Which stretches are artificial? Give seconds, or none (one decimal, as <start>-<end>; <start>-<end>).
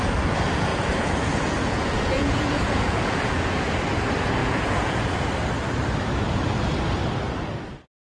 0.7-3.7; 4.4-5.2